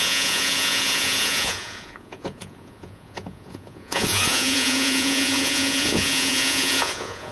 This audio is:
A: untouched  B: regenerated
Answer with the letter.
B